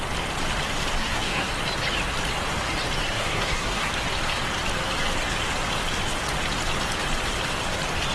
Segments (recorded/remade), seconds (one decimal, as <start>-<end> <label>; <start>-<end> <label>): 0.0-1.0 recorded; 1.0-1.5 remade; 1.5-3.0 recorded; 3.0-3.9 remade; 3.9-8.1 recorded